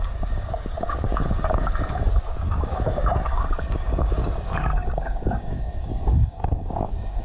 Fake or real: fake